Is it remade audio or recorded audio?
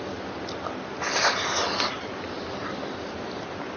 recorded